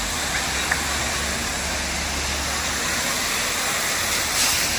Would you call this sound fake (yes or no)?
no